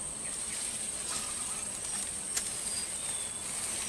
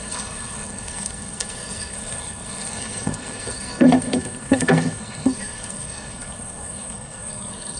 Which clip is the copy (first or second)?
second